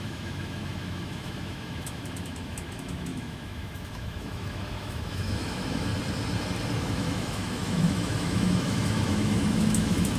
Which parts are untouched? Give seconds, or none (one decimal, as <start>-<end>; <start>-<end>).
5.9-6.8